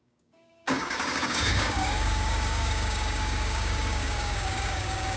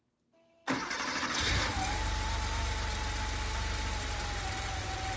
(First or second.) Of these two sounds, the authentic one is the second